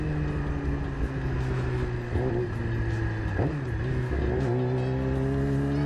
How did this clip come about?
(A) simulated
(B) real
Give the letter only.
B